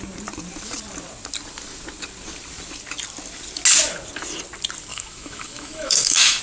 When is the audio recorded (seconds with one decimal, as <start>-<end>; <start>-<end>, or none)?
0.0-4.9

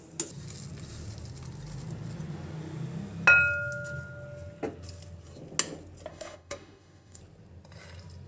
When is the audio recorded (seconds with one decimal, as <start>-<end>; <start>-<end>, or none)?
0.0-6.1; 7.2-8.3

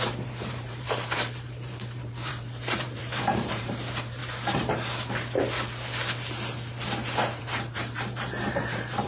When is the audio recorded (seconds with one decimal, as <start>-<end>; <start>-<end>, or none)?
4.2-7.4

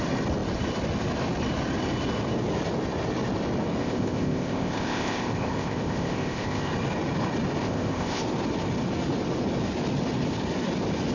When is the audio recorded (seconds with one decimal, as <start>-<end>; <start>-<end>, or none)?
0.0-3.8; 6.7-7.6; 8.2-11.1

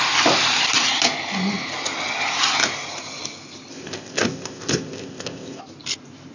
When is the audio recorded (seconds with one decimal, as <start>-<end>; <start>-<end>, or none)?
0.0-3.7; 5.6-6.3

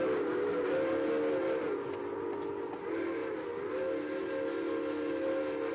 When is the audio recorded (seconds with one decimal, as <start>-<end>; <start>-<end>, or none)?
0.0-3.2; 3.7-5.7

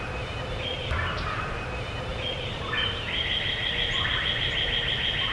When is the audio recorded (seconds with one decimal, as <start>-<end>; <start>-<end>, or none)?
0.0-0.7; 1.4-2.1; 3.7-5.3

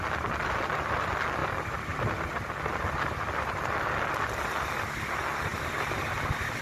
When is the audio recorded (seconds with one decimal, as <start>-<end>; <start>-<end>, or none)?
0.0-6.6